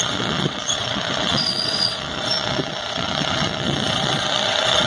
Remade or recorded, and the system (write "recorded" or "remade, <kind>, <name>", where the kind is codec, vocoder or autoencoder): remade, vocoder, WaveNeXt